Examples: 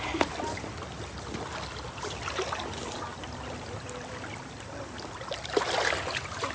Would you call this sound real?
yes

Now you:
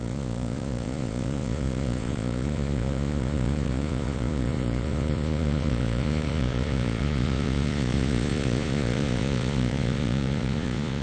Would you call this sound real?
no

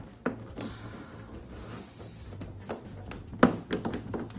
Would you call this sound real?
yes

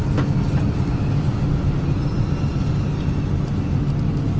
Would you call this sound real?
yes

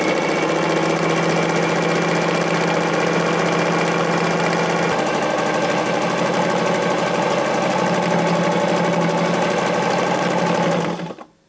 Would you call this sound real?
yes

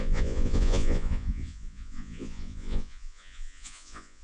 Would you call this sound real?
no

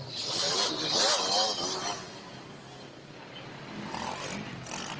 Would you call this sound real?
yes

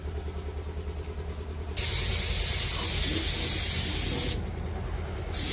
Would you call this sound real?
yes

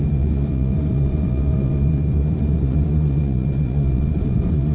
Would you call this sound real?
no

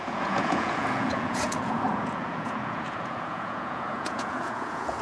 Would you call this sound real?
no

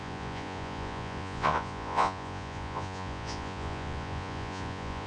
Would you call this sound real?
no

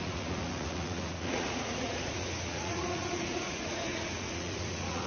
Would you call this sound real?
no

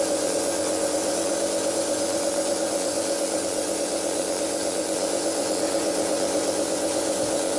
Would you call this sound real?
no